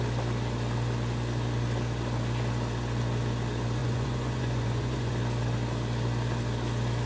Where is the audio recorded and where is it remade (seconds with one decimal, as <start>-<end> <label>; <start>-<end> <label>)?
0.0-3.8 recorded; 3.8-5.1 remade; 5.1-7.1 recorded